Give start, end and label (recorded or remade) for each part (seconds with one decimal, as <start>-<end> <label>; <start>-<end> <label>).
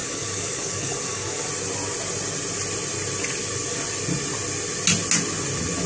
0.0-1.5 remade; 1.5-5.9 recorded